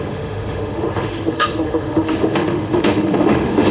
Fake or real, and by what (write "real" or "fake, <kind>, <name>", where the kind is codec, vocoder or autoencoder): fake, autoencoder, DAC-VAE